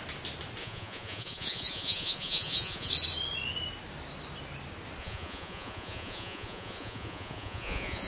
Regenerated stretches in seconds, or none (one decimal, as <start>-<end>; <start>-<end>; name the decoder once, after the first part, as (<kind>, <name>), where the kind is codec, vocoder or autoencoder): 0.6-2.9 (vocoder, Vocos); 5.0-8.1

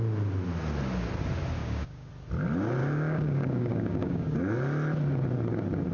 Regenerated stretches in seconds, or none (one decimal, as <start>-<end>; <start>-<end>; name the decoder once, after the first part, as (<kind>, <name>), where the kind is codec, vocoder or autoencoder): 1.6-2.1 (codec, DAC); 2.8-4.4